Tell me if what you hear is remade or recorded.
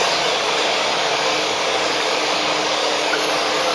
remade